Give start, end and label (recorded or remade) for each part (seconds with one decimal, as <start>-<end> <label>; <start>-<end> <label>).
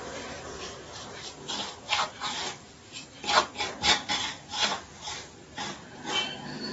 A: 0.0-6.7 recorded